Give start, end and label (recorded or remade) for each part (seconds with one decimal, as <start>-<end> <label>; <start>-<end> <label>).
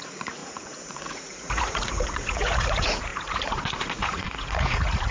0.0-5.1 remade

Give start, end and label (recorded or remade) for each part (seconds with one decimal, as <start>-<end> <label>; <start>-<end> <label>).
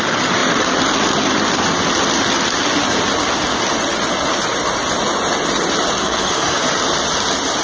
0.0-6.0 recorded; 6.0-6.6 remade; 6.6-7.6 recorded